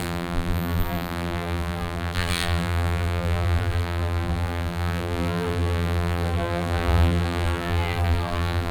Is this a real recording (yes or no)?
no